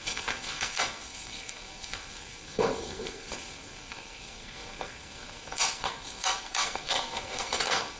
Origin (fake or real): fake